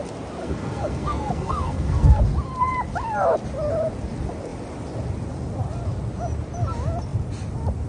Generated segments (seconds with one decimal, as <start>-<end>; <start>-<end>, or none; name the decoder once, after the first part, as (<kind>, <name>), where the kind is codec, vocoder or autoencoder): 0.4-2.2 (codec, SNAC)